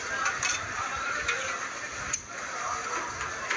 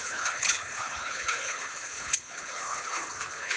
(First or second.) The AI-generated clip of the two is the second